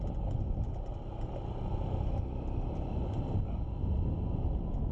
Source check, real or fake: real